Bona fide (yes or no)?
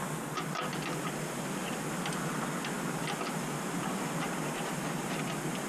yes